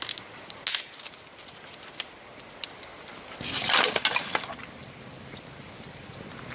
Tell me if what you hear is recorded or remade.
recorded